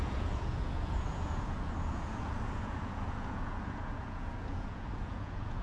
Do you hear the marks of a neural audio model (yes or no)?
yes